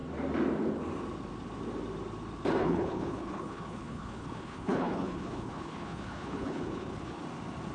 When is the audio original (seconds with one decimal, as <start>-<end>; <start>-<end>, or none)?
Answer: 0.0-2.6; 7.2-7.7